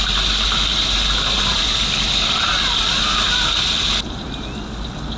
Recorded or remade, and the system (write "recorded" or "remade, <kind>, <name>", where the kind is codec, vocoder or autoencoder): recorded